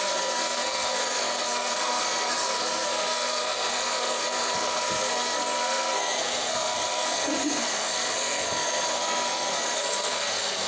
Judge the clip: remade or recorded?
remade